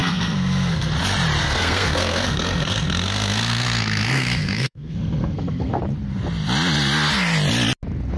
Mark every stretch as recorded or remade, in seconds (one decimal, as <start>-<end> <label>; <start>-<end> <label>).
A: 0.0-0.9 remade; 0.9-1.4 recorded; 1.4-5.8 remade; 5.8-8.2 recorded